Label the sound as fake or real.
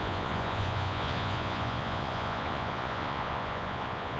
fake